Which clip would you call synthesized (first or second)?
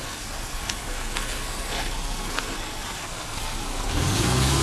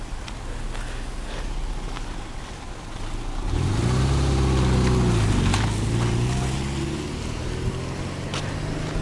first